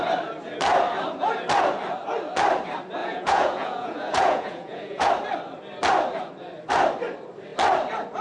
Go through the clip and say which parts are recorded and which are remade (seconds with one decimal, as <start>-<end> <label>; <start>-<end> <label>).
0.0-3.0 recorded; 3.0-5.1 remade; 5.1-8.2 recorded